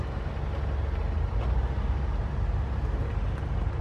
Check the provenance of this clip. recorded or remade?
recorded